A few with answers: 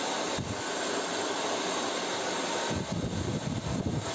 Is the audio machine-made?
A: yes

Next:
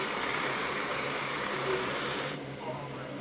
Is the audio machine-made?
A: yes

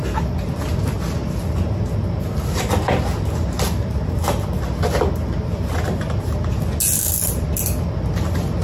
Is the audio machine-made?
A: no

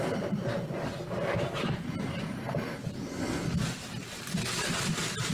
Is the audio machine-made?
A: no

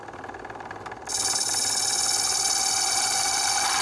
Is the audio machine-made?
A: no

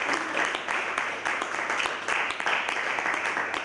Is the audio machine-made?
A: no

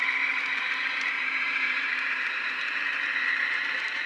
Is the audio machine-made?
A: yes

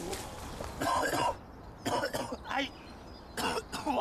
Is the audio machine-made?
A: no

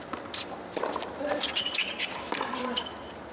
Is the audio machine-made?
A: yes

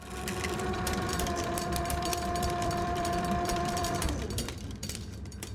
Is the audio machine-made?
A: yes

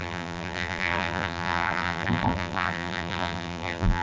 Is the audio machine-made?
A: yes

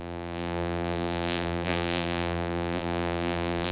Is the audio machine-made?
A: yes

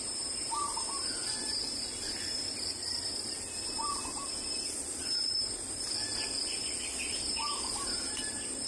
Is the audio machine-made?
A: yes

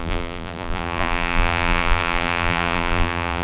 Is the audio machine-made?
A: yes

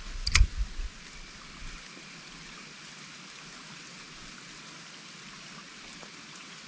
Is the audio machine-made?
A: no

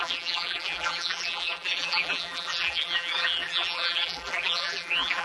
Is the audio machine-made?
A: yes